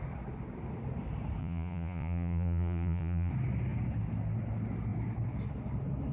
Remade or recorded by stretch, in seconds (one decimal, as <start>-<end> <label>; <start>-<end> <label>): 0.0-1.4 recorded; 1.4-3.3 remade; 3.3-6.1 recorded